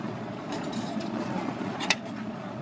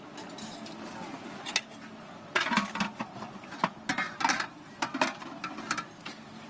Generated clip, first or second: first